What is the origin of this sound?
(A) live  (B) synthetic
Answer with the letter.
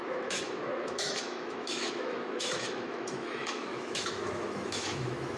B